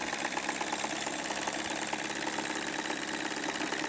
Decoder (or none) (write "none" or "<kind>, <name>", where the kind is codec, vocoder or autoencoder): none